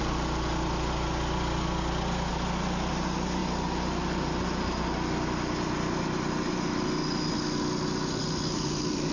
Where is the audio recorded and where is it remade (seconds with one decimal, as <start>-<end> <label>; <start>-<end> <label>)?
0.0-9.1 recorded